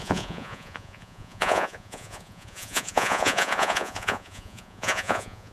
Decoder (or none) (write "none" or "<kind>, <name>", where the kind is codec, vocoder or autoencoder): vocoder, Vocos